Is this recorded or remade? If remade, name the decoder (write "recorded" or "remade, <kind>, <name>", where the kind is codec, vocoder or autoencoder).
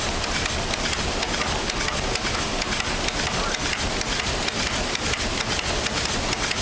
recorded